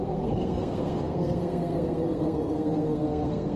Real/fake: fake